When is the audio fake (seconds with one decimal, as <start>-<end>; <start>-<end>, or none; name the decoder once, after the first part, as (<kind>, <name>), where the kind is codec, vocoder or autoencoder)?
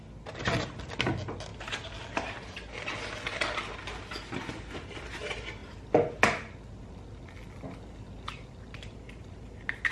none